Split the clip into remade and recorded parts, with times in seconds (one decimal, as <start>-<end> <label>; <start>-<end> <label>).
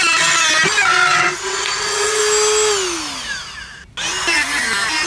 0.0-1.1 recorded; 1.1-2.2 remade; 2.2-5.1 recorded